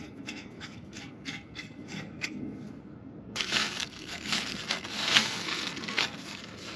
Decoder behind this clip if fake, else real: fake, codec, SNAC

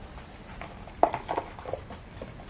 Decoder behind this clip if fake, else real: real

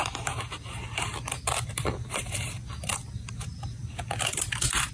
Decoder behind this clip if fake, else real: fake, vocoder, BigVGAN v2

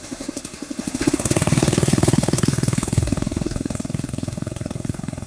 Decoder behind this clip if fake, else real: fake, codec, SNAC